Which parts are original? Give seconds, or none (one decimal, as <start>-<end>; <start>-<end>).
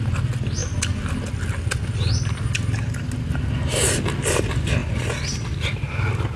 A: 0.0-6.4